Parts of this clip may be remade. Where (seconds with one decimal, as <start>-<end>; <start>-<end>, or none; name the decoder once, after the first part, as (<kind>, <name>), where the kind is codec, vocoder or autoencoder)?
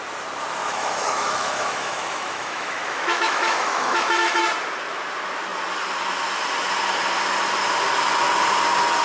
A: 0.6-4.4 (autoencoder, DAC-VAE)